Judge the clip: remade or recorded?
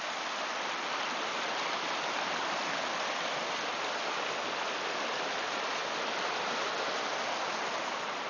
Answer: recorded